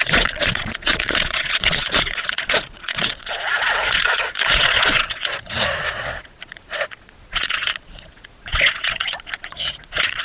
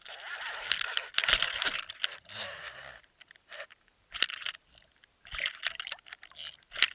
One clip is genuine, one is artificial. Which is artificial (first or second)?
first